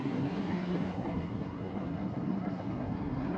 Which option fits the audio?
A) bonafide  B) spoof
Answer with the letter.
B